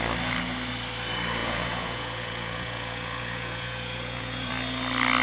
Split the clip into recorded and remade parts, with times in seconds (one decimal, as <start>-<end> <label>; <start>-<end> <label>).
0.0-1.4 recorded; 1.4-4.5 remade; 4.5-5.2 recorded